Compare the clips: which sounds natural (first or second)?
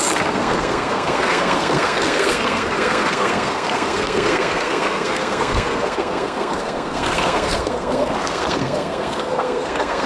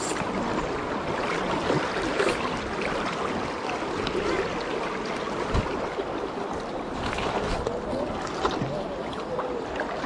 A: second